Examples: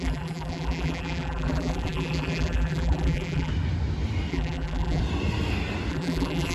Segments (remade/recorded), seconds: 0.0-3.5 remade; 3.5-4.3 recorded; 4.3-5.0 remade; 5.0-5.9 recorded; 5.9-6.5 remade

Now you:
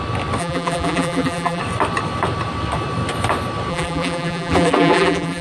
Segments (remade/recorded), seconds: 0.0-0.4 recorded; 0.4-1.6 remade; 1.6-3.7 recorded; 3.7-5.4 remade

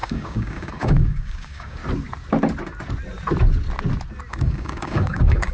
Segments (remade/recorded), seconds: 0.0-1.8 remade; 1.8-4.3 recorded; 4.3-5.5 remade